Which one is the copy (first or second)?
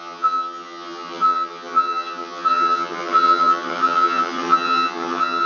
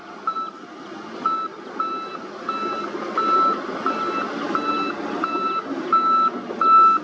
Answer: first